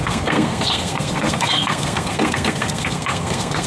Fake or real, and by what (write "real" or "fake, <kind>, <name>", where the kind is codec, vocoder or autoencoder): fake, codec, SNAC